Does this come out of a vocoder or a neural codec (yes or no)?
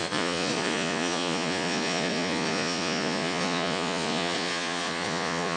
yes